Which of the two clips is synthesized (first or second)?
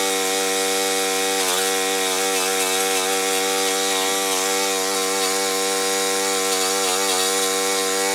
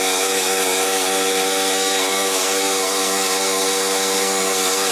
second